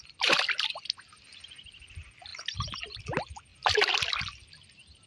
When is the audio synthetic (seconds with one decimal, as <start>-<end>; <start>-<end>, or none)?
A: none